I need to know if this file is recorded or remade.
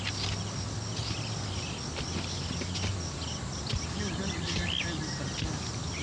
recorded